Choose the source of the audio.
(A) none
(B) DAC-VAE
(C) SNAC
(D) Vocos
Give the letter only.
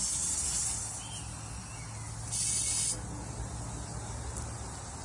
A